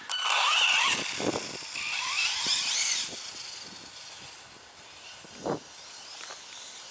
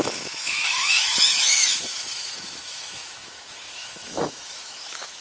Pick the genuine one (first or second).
first